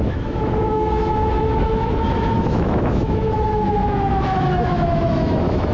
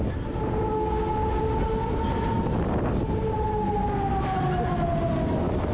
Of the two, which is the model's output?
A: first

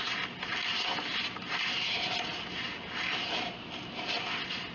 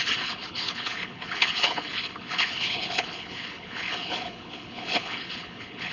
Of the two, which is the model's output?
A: second